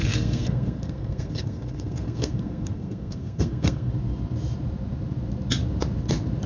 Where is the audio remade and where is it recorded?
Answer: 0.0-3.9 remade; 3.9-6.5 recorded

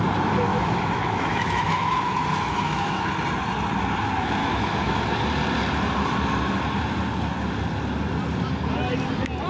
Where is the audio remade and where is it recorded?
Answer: 0.0-0.5 recorded; 0.5-3.1 remade; 3.1-4.4 recorded; 4.4-5.0 remade; 5.0-9.5 recorded

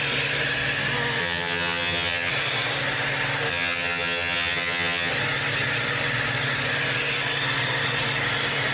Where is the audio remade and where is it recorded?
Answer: 0.0-1.2 recorded; 1.2-2.3 remade; 2.3-3.5 recorded; 3.5-5.1 remade; 5.1-8.7 recorded